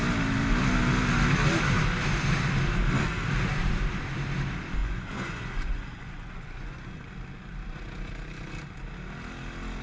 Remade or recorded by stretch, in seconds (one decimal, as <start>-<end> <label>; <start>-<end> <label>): 0.0-4.8 recorded; 4.8-7.0 remade; 7.0-9.8 recorded